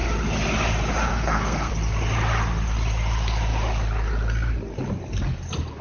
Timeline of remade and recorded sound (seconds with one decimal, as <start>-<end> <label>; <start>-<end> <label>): 0.0-1.1 recorded; 1.1-1.7 remade; 1.7-5.8 recorded